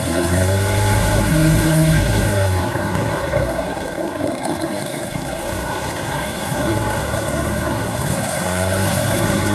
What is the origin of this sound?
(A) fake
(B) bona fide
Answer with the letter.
A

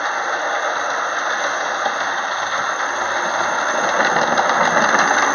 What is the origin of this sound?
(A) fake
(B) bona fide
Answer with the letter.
B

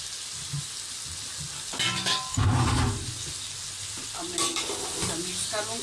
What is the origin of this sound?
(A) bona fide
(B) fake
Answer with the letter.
A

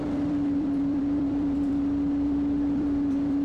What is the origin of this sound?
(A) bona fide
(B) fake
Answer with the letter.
B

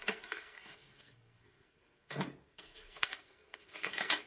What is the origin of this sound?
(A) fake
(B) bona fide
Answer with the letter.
A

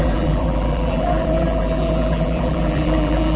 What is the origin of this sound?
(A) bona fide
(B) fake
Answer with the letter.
B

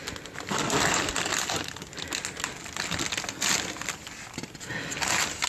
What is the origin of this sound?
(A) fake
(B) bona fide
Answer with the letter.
B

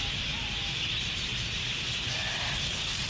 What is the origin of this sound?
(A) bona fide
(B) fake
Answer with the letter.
A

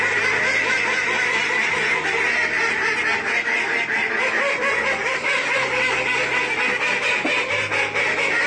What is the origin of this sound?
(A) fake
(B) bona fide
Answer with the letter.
B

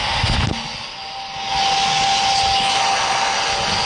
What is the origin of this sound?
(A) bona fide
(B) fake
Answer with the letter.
A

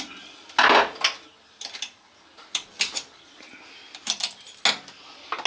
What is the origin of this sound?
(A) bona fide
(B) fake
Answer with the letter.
A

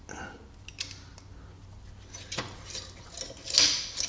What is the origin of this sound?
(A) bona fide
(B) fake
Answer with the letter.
A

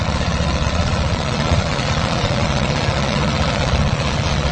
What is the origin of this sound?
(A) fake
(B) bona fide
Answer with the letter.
A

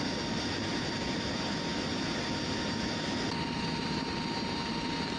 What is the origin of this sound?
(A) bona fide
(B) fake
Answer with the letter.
A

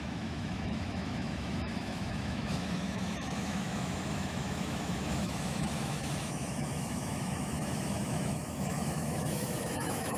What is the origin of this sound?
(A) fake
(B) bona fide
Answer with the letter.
A